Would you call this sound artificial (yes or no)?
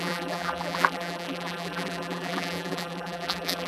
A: yes